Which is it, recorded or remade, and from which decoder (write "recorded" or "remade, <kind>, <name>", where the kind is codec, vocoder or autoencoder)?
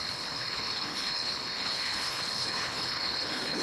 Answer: remade, codec, HILCodec